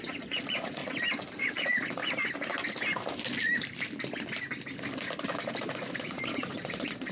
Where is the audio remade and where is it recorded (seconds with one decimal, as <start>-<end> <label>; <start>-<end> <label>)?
0.0-0.8 remade; 0.8-1.4 recorded; 1.4-2.0 remade; 2.0-5.6 recorded; 5.6-7.1 remade